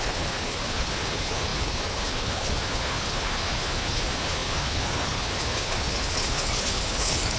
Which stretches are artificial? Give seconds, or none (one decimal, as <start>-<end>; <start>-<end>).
0.0-7.4